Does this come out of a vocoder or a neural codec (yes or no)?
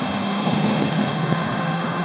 yes